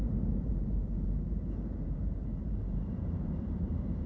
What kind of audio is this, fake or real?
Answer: fake